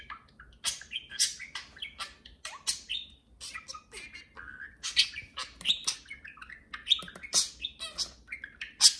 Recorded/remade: recorded